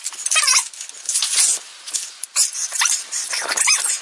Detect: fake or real real